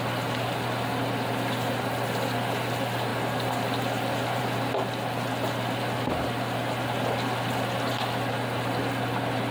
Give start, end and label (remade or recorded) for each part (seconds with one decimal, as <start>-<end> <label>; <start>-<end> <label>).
0.0-9.5 recorded